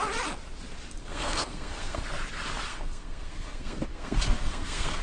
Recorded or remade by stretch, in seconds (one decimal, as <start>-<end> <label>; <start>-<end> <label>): 0.0-1.0 recorded; 1.0-2.0 remade; 2.0-2.7 recorded; 2.7-5.0 remade